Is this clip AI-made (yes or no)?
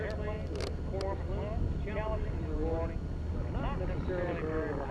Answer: no